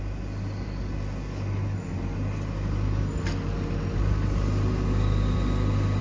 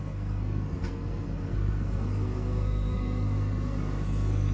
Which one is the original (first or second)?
first